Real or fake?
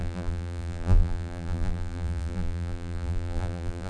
fake